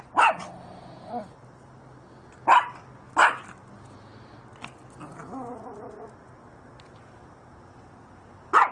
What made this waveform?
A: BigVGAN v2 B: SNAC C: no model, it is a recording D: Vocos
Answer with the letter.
C